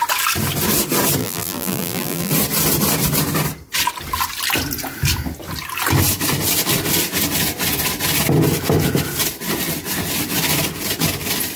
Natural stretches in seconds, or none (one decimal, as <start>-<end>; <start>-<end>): 0.0-1.2; 2.3-11.6